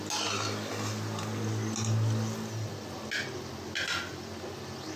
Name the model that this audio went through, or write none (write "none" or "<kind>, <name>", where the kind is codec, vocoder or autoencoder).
none